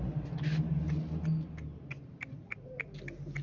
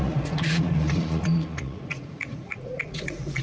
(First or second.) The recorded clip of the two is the first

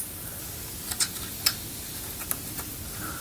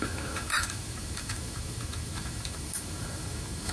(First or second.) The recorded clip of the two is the first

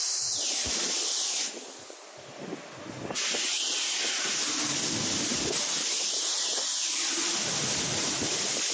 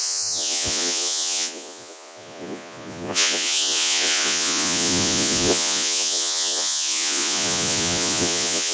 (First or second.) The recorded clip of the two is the first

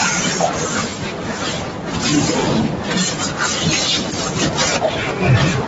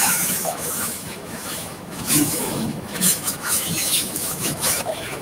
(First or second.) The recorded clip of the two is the first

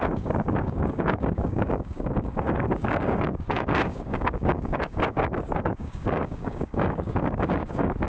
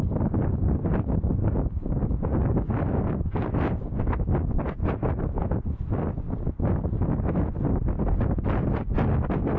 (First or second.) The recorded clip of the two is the second